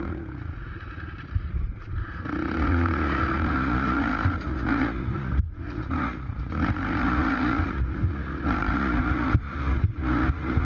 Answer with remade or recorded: remade